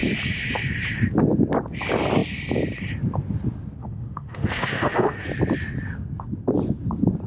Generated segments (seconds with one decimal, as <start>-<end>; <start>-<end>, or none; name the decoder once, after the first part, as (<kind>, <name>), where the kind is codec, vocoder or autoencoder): 3.8-5.3 (autoencoder, DAC-VAE)